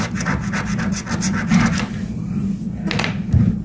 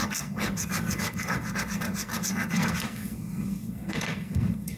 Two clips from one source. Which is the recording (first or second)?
first